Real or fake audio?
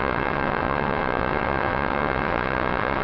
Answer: fake